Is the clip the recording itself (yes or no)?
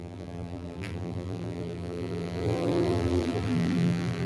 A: no